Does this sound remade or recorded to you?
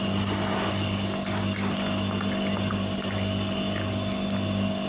recorded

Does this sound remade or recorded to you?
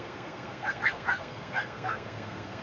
remade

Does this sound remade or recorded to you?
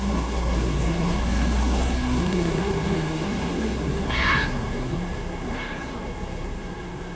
remade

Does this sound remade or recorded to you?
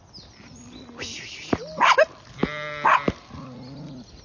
recorded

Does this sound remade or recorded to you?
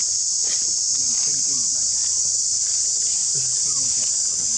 recorded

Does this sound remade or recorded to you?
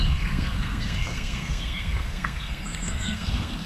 remade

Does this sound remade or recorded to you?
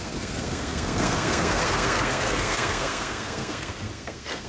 remade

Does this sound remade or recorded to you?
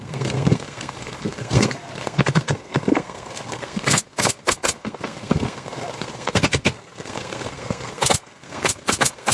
remade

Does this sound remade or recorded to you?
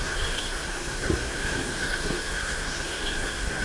remade